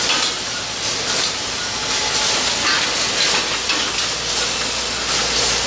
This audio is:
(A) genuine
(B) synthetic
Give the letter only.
A